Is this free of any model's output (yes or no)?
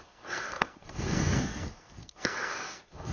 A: no